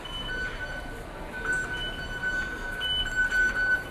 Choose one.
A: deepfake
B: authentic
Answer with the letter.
B